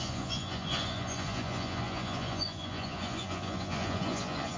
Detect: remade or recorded remade